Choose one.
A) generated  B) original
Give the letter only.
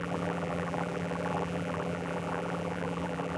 A